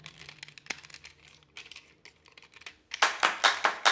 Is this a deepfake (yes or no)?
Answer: no